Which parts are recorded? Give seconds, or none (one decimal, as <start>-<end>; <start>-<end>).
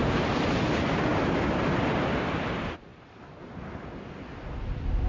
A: 0.0-5.1